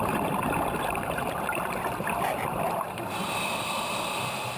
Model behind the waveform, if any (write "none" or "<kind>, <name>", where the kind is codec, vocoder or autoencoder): vocoder, BigVGAN v2